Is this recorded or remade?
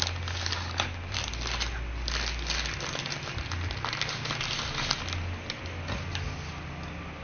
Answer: recorded